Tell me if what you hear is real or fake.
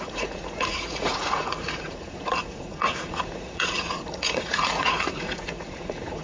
fake